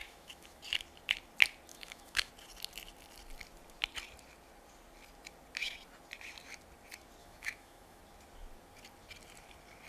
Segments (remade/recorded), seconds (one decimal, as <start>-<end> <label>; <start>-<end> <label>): 0.0-0.6 remade; 0.6-1.7 recorded; 1.7-2.3 remade; 2.3-7.2 recorded; 7.2-8.0 remade; 8.0-9.9 recorded